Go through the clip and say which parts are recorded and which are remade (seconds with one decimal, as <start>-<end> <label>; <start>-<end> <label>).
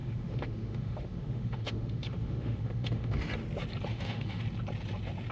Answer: 0.0-3.2 remade; 3.2-3.9 recorded; 3.9-4.4 remade; 4.4-5.3 recorded